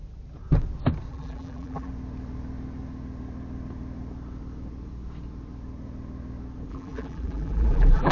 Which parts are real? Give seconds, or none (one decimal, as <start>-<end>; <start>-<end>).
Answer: 0.0-1.1; 1.9-6.7